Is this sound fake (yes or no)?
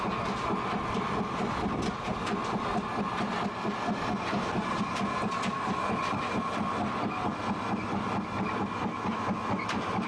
no